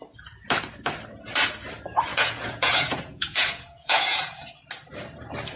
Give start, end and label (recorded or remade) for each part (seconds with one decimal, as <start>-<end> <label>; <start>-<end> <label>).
0.0-2.1 recorded; 2.1-4.6 remade; 4.6-5.6 recorded